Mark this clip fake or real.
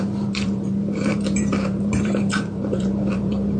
fake